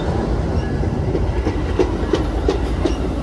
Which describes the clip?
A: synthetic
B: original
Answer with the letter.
B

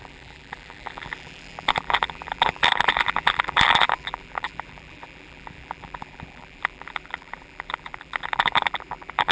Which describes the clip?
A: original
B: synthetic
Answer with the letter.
B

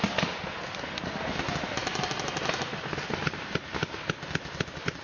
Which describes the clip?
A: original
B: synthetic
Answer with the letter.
A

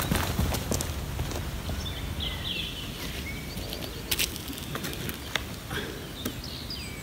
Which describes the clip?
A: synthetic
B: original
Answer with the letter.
B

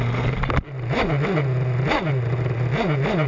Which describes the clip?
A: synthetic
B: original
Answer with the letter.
B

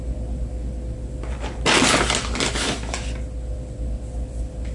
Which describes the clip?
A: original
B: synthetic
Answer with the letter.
A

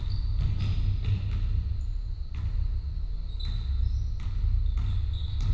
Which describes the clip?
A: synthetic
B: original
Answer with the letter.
B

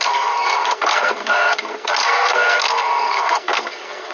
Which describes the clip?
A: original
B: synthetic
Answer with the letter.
B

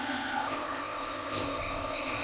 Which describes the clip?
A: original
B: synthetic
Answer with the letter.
B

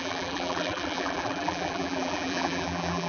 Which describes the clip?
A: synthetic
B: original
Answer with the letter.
A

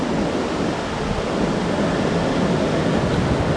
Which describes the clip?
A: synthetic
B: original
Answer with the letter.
B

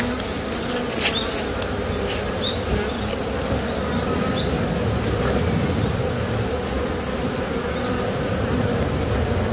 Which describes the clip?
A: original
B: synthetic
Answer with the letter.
A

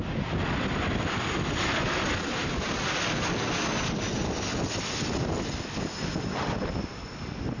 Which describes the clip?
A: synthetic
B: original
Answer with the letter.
B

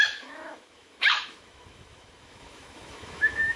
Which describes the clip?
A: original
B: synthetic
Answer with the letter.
B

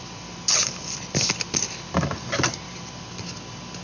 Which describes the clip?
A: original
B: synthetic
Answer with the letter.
B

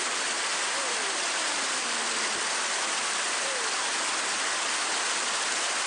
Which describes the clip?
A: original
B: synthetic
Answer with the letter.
A